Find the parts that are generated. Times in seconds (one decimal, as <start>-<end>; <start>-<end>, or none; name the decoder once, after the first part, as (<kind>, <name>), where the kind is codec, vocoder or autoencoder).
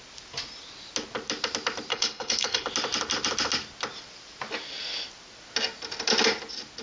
1.9-2.7 (codec, HILCodec)